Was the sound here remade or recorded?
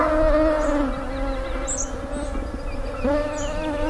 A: recorded